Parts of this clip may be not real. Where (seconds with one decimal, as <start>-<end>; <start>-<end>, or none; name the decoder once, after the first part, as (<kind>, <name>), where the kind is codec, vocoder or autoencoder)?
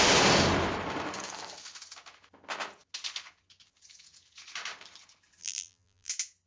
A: 5.4-6.1 (vocoder, BigVGAN v2)